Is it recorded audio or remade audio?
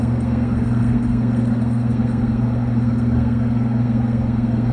remade